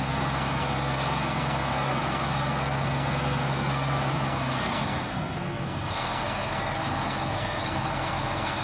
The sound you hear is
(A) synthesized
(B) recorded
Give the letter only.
A